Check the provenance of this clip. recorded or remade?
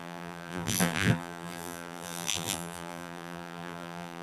remade